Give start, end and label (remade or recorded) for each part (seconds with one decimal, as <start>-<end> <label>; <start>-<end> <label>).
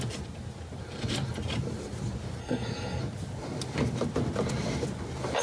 0.0-2.4 recorded; 2.4-3.0 remade; 3.0-5.4 recorded